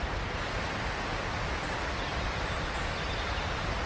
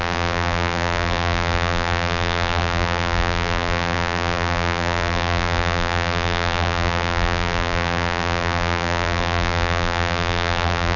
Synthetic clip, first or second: second